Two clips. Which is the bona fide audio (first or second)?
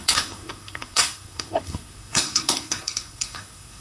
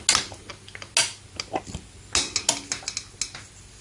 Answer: second